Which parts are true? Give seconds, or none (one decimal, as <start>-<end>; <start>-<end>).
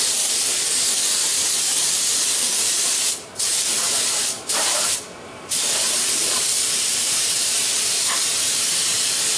none